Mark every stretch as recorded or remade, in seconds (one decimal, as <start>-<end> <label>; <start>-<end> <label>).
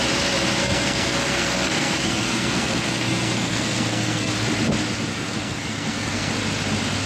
0.0-0.6 recorded; 0.6-4.3 remade; 4.3-5.1 recorded; 5.1-6.3 remade; 6.3-7.1 recorded